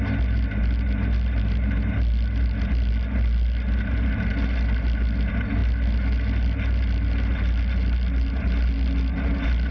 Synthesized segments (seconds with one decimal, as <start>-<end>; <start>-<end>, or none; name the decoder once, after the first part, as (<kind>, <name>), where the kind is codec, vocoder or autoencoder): none